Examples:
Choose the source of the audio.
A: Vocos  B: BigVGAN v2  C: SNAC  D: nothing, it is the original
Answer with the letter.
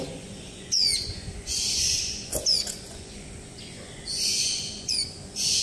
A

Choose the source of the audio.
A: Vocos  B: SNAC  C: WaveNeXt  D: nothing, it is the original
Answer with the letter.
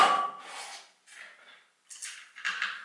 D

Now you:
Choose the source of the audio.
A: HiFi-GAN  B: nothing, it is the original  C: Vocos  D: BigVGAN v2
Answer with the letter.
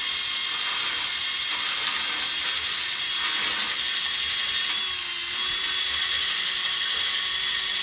B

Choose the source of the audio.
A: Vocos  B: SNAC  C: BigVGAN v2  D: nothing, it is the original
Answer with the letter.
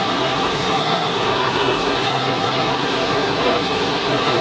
B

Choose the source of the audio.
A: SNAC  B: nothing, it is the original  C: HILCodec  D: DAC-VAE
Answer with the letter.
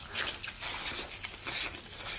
B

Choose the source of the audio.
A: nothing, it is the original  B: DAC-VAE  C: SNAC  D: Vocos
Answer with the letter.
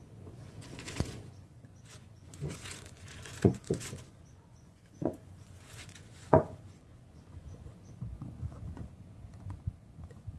D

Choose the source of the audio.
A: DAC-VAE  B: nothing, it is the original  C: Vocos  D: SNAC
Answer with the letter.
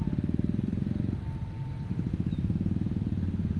B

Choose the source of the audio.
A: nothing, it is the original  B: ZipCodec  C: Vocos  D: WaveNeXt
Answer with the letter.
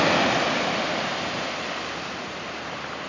A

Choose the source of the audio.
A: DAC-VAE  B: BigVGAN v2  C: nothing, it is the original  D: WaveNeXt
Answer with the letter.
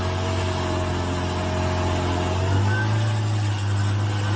C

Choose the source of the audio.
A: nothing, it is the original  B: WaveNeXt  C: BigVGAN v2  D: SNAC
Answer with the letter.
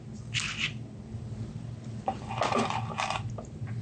A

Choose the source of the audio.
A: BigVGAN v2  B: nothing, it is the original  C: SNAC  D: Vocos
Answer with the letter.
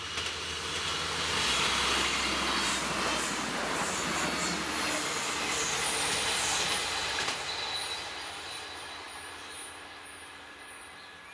B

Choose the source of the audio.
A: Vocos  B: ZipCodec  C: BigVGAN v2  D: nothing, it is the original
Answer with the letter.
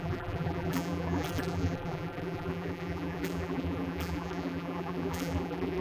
C